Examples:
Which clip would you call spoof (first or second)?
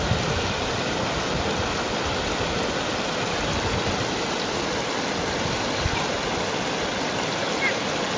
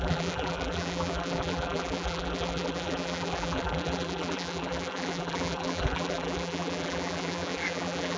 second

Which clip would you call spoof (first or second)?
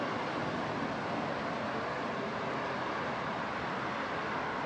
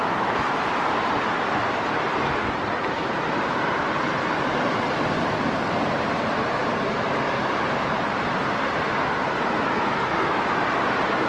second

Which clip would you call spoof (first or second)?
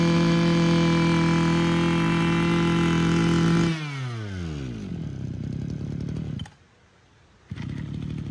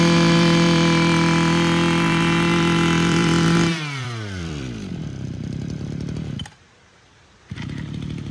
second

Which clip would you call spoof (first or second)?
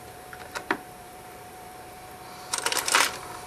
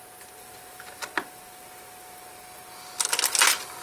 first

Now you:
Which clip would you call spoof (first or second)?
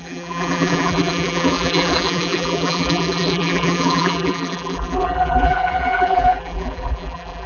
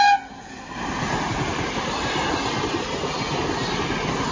first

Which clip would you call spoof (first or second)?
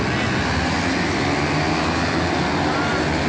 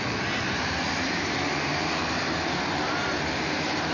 second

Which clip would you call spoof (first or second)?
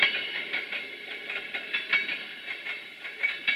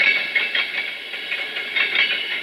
first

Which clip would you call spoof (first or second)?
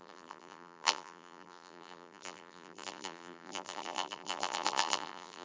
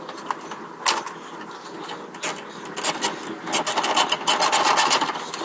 first